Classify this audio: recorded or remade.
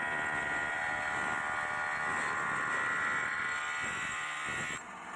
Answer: recorded